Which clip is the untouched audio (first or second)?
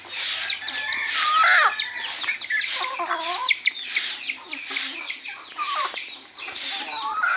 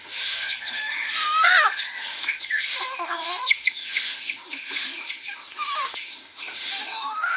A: first